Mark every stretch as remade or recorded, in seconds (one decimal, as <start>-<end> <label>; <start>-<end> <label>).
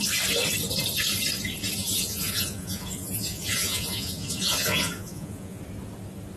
0.0-1.8 recorded; 1.8-5.6 remade; 5.6-6.4 recorded